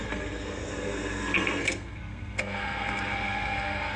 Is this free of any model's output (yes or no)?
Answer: no